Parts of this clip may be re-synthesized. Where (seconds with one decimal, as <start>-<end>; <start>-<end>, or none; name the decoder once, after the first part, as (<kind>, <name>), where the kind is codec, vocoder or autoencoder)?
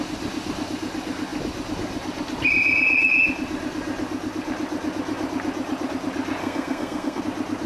6.4-7.2 (codec, SNAC)